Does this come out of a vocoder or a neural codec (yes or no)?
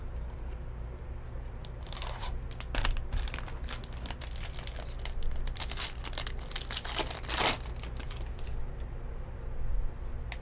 no